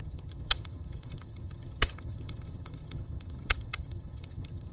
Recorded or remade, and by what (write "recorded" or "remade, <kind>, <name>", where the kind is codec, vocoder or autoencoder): remade, vocoder, HiFi-GAN